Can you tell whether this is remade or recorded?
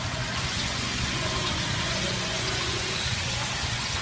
remade